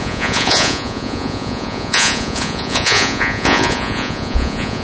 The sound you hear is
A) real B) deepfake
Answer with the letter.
B